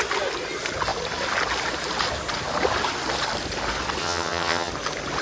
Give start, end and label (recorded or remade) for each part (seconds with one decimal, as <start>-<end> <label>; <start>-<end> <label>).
0.0-4.0 recorded; 4.0-4.7 remade; 4.7-5.2 recorded